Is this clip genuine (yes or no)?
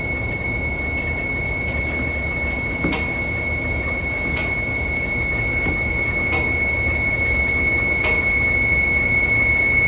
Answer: yes